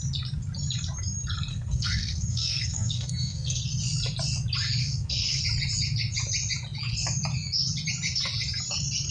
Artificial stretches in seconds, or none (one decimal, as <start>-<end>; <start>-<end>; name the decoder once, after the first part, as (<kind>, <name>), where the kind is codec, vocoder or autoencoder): 1.5-3.6 (codec, SNAC); 4.8-5.4